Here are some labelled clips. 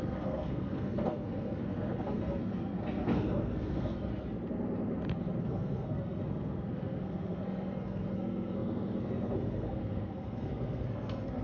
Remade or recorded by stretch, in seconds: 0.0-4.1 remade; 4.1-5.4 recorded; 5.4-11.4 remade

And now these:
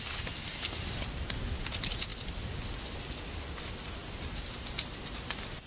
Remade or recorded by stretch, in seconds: 0.0-5.7 recorded

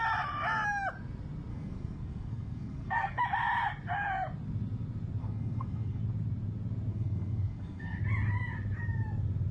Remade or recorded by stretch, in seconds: 0.0-1.5 recorded; 1.5-3.2 remade; 3.2-5.2 recorded; 5.2-6.0 remade; 6.0-6.9 recorded; 6.9-8.0 remade; 8.0-9.5 recorded